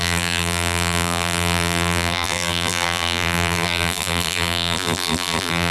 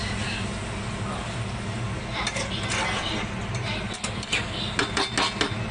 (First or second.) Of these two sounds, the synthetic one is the first